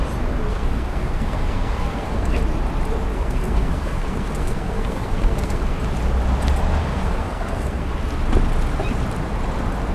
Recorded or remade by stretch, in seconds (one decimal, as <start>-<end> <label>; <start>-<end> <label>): 0.0-0.5 recorded; 0.5-2.4 remade; 2.4-3.1 recorded; 3.1-5.8 remade; 5.8-6.8 recorded; 6.8-7.9 remade; 7.9-9.9 recorded